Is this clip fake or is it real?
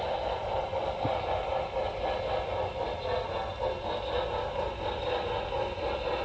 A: real